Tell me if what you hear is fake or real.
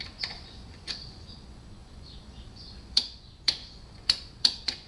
fake